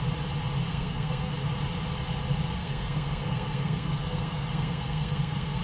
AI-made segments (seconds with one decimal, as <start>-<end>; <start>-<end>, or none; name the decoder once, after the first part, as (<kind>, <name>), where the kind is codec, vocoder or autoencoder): 0.7-1.3 (codec, SNAC); 2.6-5.6